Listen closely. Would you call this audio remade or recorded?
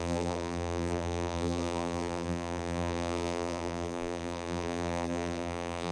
remade